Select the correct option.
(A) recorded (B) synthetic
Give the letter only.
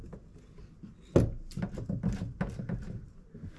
A